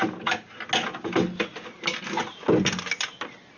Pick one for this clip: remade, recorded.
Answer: recorded